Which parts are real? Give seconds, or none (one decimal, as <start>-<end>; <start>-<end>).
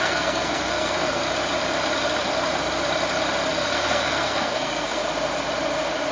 1.2-3.5; 5.0-6.1